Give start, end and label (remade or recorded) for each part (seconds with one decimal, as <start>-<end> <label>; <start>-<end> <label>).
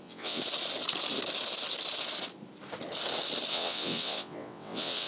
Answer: 0.0-0.4 remade; 0.4-3.5 recorded; 3.5-5.1 remade